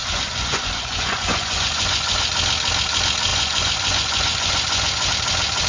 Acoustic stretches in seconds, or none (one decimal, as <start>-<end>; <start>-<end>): 2.3-3.3; 5.1-5.7